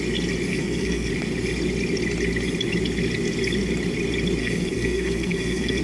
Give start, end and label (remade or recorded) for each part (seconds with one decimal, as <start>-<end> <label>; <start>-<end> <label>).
0.0-0.5 recorded; 0.5-1.1 remade; 1.1-4.4 recorded; 4.4-5.8 remade